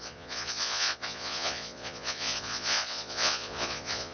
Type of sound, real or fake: fake